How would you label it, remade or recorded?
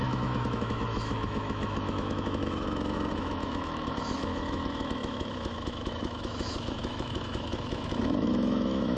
remade